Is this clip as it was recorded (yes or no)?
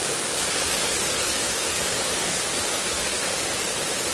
no